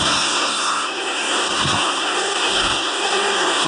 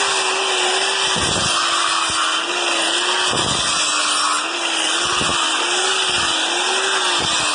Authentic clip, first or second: second